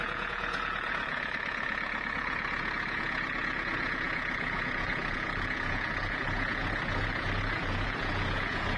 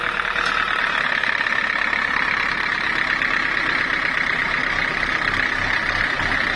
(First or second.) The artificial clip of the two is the first